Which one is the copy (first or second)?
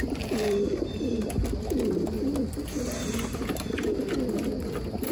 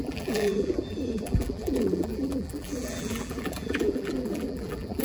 second